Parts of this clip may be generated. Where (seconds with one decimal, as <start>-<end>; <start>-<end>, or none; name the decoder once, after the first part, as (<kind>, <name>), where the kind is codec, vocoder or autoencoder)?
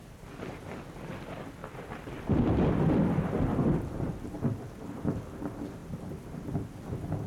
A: 0.0-0.8 (vocoder, BigVGAN v2); 1.6-5.0